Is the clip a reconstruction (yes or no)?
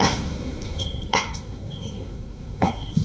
yes